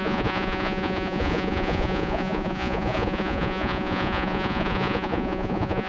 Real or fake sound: fake